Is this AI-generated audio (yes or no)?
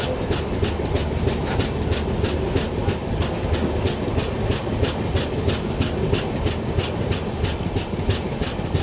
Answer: no